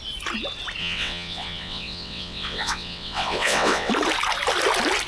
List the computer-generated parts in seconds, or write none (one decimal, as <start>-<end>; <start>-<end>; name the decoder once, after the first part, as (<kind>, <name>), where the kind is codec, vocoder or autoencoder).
0.8-3.9 (vocoder, WaveNeXt)